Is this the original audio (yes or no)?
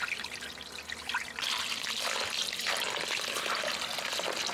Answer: yes